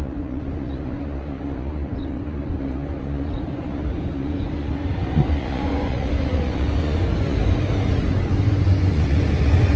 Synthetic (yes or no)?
yes